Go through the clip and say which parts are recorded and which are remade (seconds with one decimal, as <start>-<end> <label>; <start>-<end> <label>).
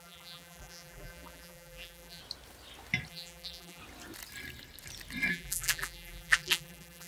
0.0-2.2 remade; 2.2-3.1 recorded; 3.1-3.8 remade; 3.8-5.3 recorded; 5.3-7.1 remade